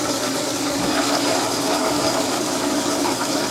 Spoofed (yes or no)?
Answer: yes